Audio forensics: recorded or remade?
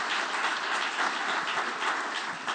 recorded